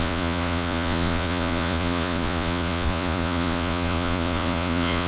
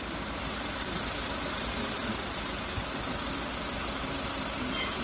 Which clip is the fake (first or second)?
first